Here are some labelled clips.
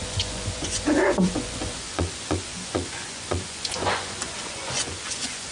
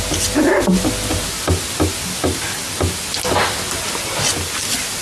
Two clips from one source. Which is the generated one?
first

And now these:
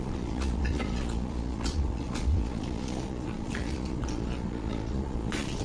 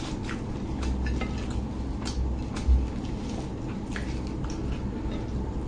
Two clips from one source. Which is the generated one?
first